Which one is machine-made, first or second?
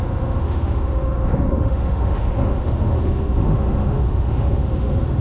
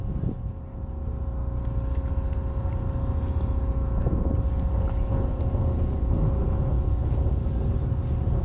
first